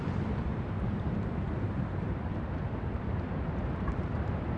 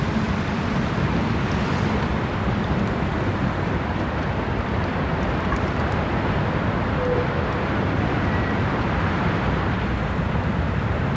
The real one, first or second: second